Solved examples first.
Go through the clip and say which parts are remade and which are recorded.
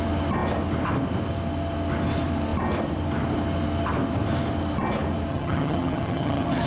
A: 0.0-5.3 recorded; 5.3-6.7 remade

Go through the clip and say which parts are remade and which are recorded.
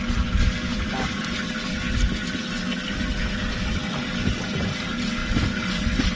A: 0.0-6.2 recorded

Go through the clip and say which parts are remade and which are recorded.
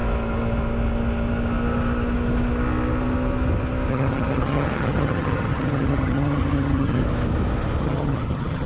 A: 0.0-3.9 recorded; 3.9-7.0 remade; 7.0-7.8 recorded; 7.8-8.7 remade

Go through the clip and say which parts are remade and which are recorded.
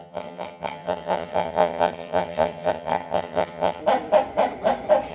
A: 0.0-3.8 remade; 3.8-5.1 recorded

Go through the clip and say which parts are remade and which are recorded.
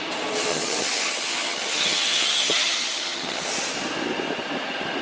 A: 0.0-0.5 recorded; 0.5-3.5 remade; 3.5-5.0 recorded